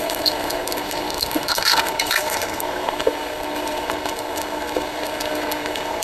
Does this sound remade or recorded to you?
remade